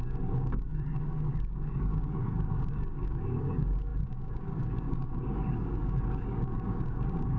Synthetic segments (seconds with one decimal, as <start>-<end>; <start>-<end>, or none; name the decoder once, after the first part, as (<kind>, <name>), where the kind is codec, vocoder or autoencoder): 0.0-7.4 (codec, DAC)